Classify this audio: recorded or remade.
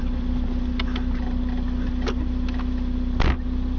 recorded